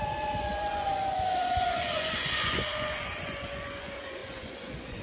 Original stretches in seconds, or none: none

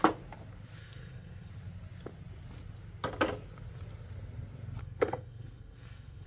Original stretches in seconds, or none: 0.0-0.8; 1.5-4.8

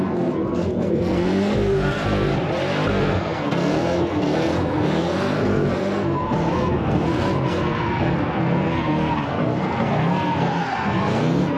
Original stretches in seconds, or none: 2.3-2.9

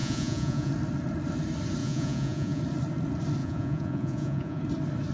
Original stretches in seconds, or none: 0.7-1.8; 2.6-3.4; 4.6-5.1

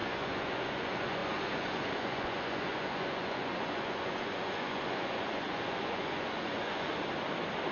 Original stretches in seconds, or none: 6.9-7.7

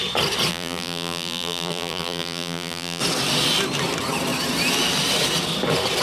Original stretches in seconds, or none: 0.0-0.5; 3.0-6.0

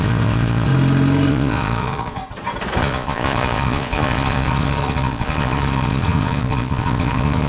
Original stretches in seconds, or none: 0.7-1.3; 2.2-2.8